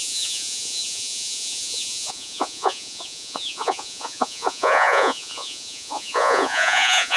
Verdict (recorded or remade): remade